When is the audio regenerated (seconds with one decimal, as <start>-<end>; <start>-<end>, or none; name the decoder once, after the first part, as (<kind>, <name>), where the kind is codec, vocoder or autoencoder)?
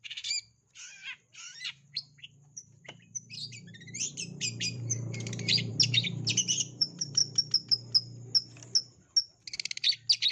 0.0-5.7 (vocoder, BigVGAN v2); 6.3-7.2